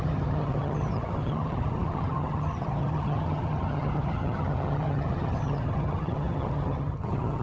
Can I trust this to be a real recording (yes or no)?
no